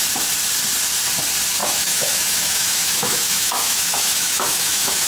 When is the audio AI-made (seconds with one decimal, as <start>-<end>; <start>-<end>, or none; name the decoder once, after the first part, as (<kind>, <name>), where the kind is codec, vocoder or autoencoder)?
1.6-5.1 (autoencoder, DAC-VAE)